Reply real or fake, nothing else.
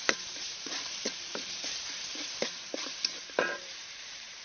fake